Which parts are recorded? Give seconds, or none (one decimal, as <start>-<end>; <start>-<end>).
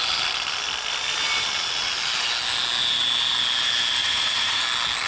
0.0-4.0; 4.6-5.1